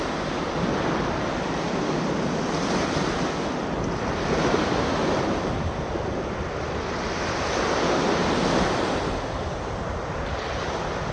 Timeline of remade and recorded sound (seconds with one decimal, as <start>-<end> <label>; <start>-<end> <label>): 0.0-11.1 recorded